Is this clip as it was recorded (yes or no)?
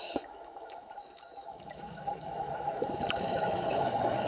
no